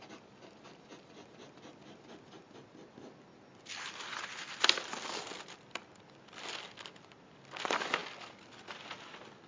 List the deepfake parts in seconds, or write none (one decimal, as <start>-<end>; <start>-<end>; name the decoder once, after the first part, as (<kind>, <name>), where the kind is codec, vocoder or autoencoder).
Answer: none